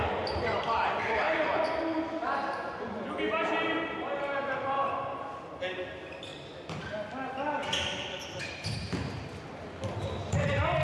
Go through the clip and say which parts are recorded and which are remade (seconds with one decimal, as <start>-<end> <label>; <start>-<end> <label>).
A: 0.0-10.8 recorded